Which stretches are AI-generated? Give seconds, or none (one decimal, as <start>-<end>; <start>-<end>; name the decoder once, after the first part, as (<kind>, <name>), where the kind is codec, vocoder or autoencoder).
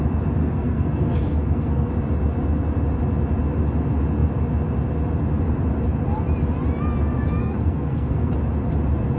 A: 0.4-1.9 (codec, SNAC); 7.4-8.3